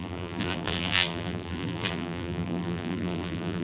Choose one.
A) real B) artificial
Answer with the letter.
B